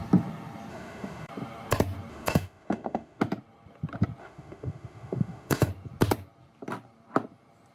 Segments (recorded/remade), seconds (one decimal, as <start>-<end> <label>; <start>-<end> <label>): 0.0-0.7 recorded; 0.7-1.3 remade; 1.3-2.1 recorded; 2.1-3.2 remade; 3.2-4.2 recorded; 4.2-5.7 remade; 5.7-7.7 recorded